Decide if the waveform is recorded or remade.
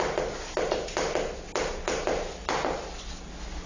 recorded